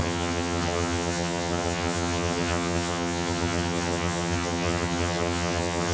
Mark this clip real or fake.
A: fake